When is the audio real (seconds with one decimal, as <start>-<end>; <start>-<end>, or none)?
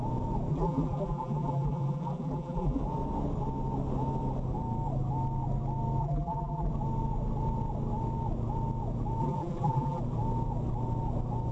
0.0-0.5; 2.8-6.0; 6.7-9.2; 10.0-11.5